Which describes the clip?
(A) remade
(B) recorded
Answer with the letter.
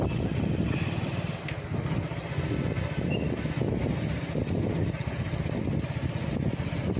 B